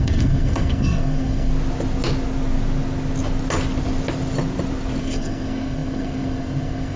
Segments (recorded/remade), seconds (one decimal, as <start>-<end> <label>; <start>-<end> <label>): 0.0-1.5 remade; 1.5-5.0 recorded; 5.0-7.0 remade